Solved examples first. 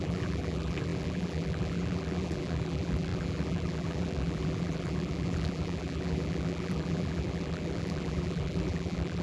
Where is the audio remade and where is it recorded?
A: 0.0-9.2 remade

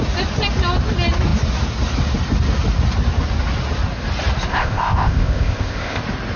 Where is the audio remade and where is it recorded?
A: 0.0-4.5 recorded; 4.5-6.0 remade; 6.0-6.4 recorded

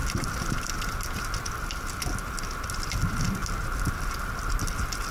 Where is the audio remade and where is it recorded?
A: 0.0-3.4 recorded; 3.4-5.1 remade

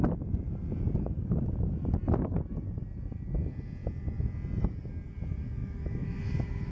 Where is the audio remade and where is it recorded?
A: 0.0-5.6 recorded; 5.6-6.7 remade

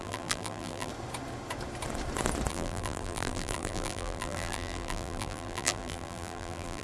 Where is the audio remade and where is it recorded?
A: 0.0-0.9 remade; 0.9-2.5 recorded; 2.5-6.8 remade

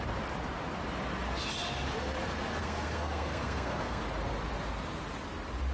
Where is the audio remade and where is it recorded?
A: 0.0-2.6 recorded; 2.6-4.0 remade; 4.0-5.7 recorded